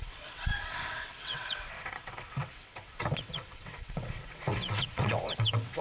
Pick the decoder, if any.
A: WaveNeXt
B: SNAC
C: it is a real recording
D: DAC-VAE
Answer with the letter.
A